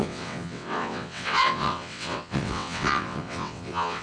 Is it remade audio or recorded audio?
remade